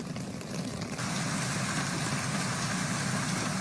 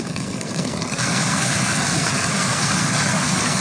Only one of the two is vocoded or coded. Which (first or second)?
second